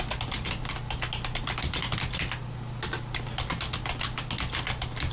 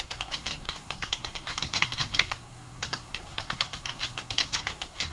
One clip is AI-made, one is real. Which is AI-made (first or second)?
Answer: second